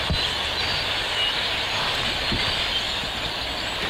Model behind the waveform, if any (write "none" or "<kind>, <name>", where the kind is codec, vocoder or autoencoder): none